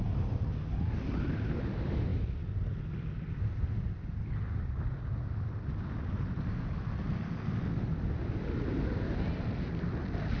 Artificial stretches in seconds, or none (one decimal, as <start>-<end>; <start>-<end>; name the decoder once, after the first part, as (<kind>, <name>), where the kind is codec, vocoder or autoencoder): none